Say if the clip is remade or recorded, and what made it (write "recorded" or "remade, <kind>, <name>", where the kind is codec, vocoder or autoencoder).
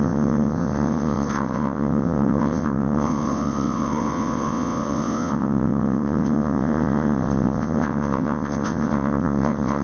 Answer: remade, vocoder, WaveNeXt